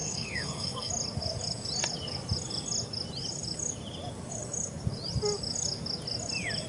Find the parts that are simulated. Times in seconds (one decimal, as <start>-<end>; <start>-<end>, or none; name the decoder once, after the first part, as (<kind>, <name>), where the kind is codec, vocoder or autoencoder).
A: 0.0-0.9 (codec, SNAC)